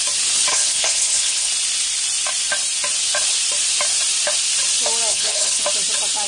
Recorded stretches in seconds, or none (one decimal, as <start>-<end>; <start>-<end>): 0.0-0.5; 1.5-5.1; 5.6-6.3